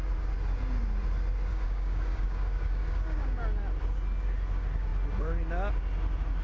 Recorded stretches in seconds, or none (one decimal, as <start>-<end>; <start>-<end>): 0.0-1.5; 3.4-6.4